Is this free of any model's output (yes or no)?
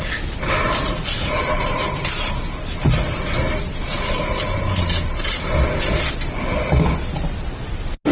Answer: yes